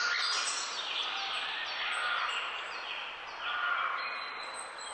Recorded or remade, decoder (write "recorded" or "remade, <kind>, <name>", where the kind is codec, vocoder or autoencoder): recorded